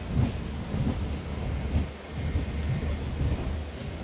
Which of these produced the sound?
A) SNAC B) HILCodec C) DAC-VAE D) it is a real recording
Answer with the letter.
D